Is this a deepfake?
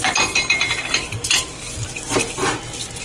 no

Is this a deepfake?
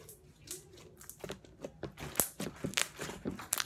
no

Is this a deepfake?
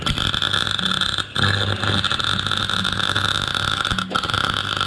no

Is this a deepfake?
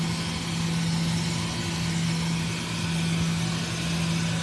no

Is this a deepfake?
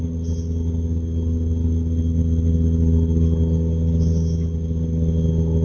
no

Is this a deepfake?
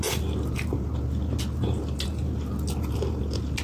no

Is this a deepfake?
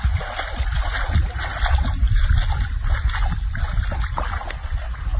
no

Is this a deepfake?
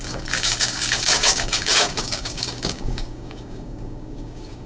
yes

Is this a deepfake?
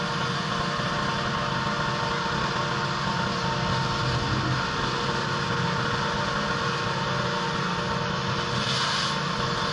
no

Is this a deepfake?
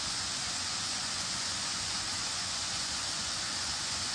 yes